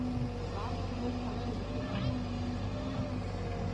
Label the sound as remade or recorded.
recorded